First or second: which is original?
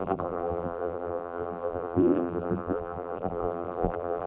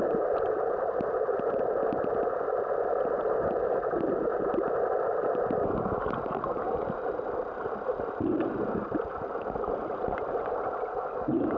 second